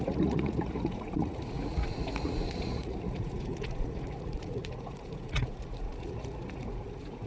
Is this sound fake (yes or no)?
yes